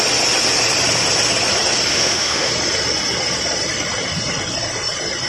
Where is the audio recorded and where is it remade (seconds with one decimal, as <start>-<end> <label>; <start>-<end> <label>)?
0.0-1.9 recorded; 1.9-2.5 remade; 2.5-5.3 recorded